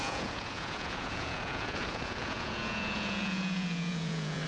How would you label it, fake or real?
fake